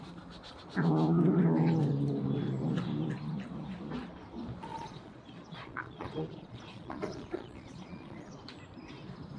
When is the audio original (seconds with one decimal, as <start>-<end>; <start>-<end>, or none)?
0.0-4.7; 8.3-9.4